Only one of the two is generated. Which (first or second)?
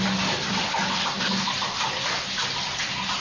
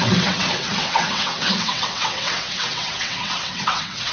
second